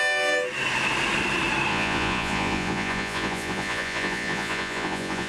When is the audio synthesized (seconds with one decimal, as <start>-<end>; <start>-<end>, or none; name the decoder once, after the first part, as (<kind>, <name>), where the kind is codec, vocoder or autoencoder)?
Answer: 1.7-5.3 (vocoder, Vocos)